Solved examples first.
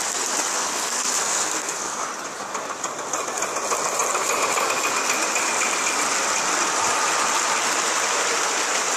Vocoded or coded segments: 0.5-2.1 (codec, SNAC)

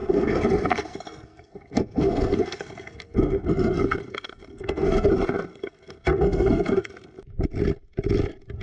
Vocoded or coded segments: 0.0-5.1 (codec, SNAC); 5.5-6.9

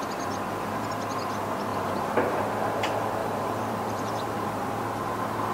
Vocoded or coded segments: 1.7-2.4 (vocoder, BigVGAN v2); 3.2-4.7

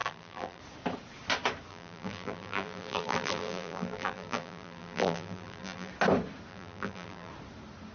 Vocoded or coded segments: 0.0-0.6 (vocoder, BigVGAN v2); 1.7-5.9; 6.5-7.3

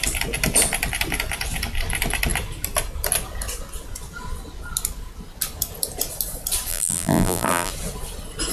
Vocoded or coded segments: 6.7-7.7 (vocoder, BigVGAN v2)